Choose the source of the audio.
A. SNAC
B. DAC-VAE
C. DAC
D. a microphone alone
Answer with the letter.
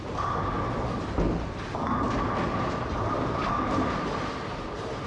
D